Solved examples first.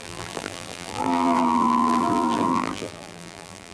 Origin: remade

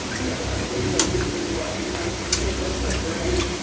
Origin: recorded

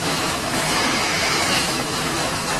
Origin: remade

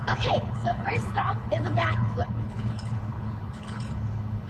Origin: remade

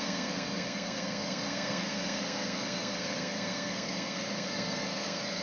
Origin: remade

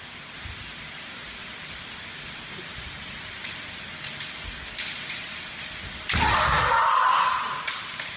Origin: recorded